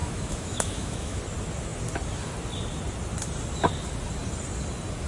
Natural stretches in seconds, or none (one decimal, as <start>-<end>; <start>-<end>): 1.2-5.1